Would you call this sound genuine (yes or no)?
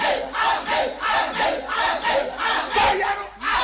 yes